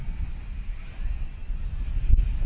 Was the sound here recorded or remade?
recorded